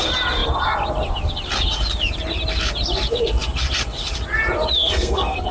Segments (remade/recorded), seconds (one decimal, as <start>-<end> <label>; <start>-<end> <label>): 0.0-4.8 recorded; 4.8-5.5 remade